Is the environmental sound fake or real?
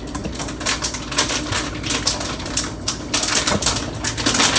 real